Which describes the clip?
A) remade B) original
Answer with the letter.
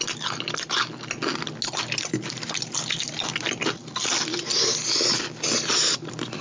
B